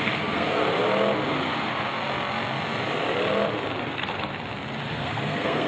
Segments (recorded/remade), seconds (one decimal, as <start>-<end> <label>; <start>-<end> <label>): 0.0-0.6 remade; 0.6-3.8 recorded; 3.8-4.3 remade; 4.3-4.9 recorded; 4.9-5.7 remade